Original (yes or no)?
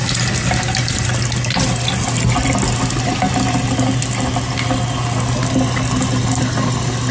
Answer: yes